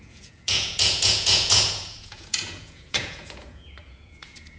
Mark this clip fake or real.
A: fake